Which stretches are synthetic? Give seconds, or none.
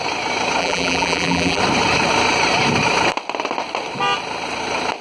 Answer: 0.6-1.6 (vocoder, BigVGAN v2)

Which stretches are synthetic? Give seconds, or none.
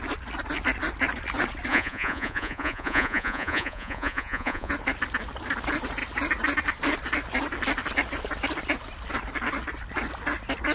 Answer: 1.7-4.7 (vocoder, Vocos)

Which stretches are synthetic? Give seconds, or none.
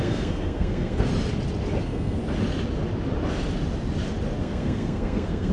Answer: 0.0-1.1 (codec, SNAC); 1.8-2.2; 4.4-5.5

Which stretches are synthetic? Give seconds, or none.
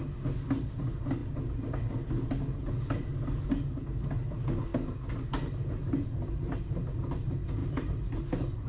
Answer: 7.6-8.2 (vocoder, BigVGAN v2)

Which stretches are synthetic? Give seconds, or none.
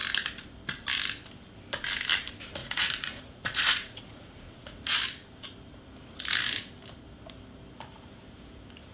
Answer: 2.6-5.0 (vocoder, Vocos)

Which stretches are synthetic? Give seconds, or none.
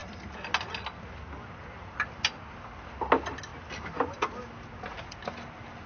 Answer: none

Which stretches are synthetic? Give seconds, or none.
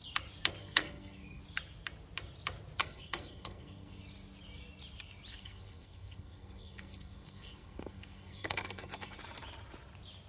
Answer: 0.6-1.4 (codec, SNAC); 2.8-4.0; 5.3-9.2